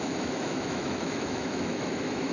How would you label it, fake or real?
fake